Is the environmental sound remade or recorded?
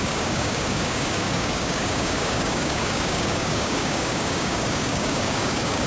remade